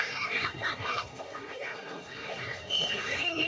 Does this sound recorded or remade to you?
remade